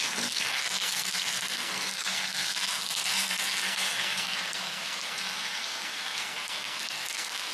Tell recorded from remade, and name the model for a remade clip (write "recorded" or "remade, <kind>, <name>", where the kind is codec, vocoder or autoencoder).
remade, codec, SNAC